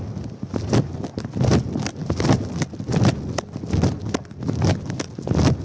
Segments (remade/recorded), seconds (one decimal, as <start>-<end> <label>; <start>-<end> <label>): 0.0-5.6 recorded